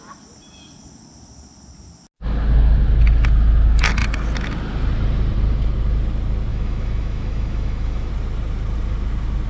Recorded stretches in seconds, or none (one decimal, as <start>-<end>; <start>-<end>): 0.0-6.5; 8.1-9.5